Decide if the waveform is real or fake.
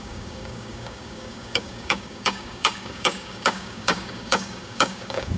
fake